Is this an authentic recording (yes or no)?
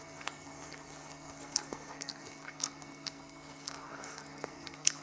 no